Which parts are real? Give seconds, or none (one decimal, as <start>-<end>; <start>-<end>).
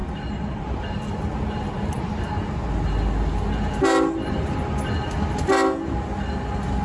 0.0-6.8